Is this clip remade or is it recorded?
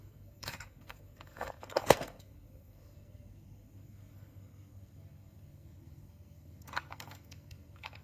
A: remade